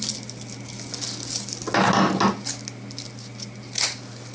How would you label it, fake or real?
real